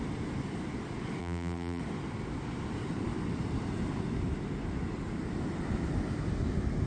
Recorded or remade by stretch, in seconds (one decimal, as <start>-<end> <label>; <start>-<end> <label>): 0.0-1.2 recorded; 1.2-1.8 remade; 1.8-6.9 recorded